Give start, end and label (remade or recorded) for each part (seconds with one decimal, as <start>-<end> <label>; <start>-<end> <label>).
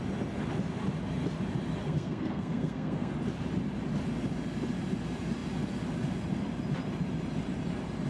0.0-1.8 recorded; 1.8-3.1 remade; 3.1-8.1 recorded